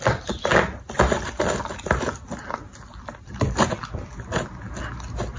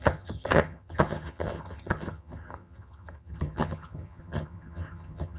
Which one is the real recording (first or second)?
first